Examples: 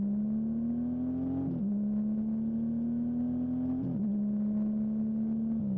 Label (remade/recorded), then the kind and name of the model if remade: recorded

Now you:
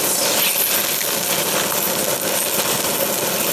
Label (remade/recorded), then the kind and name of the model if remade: recorded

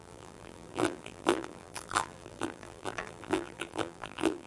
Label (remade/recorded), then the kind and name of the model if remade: remade, vocoder, BigVGAN v2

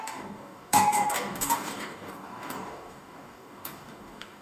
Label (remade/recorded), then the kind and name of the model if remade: remade, codec, DAC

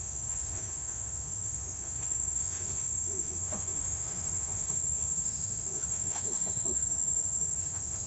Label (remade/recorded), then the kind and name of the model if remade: remade, autoencoder, DAC-VAE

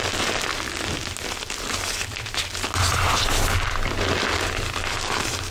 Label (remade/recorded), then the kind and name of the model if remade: recorded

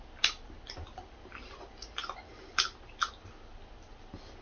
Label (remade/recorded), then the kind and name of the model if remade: recorded